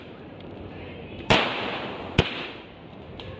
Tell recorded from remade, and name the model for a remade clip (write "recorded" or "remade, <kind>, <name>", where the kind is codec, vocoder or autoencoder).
remade, vocoder, BigVGAN v2